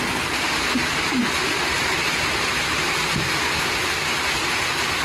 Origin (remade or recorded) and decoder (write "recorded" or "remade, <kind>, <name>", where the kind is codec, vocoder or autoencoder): recorded